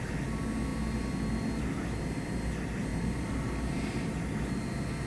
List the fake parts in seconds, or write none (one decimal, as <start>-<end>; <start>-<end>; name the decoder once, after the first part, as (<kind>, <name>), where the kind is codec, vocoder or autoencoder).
2.9-3.5 (vocoder, BigVGAN v2)